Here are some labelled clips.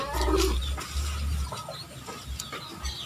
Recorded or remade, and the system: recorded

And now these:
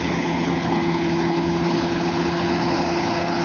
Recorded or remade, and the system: remade, codec, HILCodec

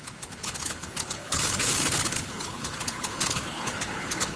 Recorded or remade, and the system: remade, codec, HILCodec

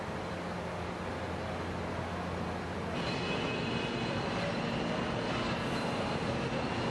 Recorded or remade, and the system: recorded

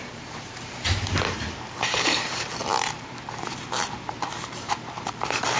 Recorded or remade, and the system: remade, vocoder, BigVGAN v2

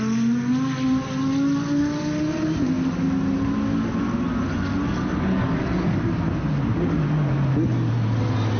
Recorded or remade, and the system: recorded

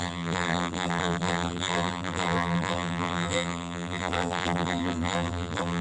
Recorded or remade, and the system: remade, vocoder, BigVGAN v2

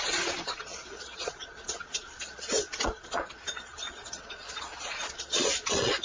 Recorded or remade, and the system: remade, vocoder, Vocos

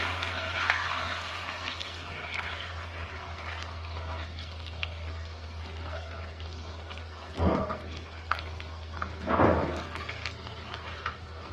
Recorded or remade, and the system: remade, codec, SNAC